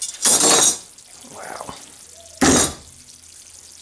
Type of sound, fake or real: real